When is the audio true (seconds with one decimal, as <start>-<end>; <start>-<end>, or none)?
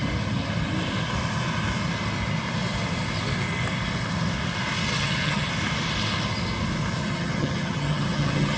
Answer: 0.0-4.9; 5.5-7.0